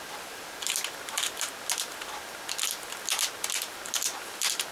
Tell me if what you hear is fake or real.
real